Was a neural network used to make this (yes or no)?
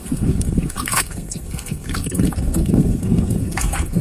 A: yes